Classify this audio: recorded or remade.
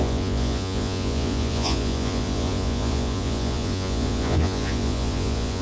remade